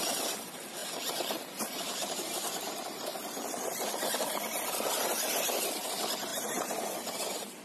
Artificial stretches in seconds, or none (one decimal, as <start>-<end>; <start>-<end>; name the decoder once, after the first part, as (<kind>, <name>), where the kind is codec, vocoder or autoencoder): 0.8-2.7 (vocoder, BigVGAN v2); 6.3-7.6